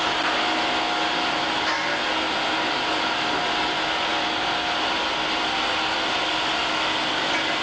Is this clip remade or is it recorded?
recorded